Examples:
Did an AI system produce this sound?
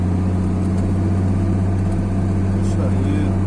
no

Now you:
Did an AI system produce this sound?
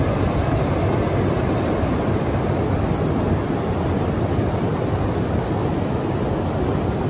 no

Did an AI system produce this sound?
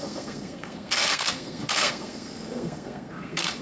yes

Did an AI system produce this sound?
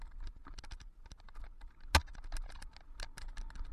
no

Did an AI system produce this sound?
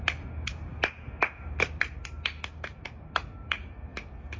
no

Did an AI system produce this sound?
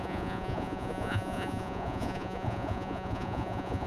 yes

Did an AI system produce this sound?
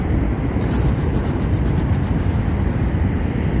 yes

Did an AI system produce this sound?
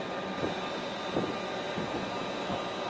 no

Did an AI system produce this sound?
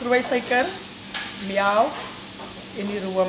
no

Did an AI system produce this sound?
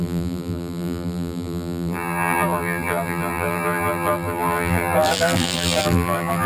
yes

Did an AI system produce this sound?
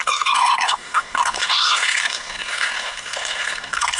yes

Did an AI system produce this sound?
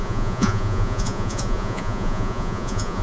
yes